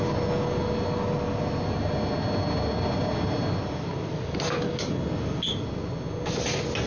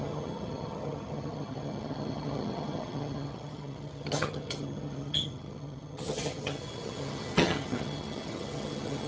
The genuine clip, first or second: first